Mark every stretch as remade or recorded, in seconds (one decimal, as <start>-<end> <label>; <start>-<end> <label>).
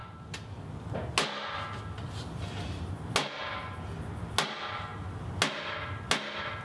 0.0-6.6 recorded